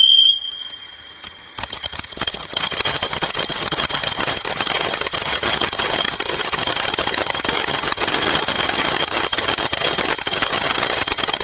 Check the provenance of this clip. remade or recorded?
remade